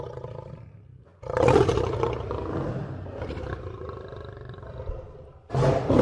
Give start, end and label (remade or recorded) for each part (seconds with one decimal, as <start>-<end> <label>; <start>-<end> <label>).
0.0-6.0 recorded